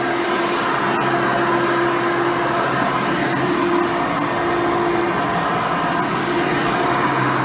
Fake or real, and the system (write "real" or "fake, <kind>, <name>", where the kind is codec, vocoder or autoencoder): real